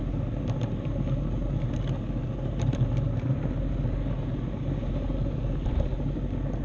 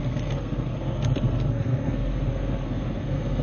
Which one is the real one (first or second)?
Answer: first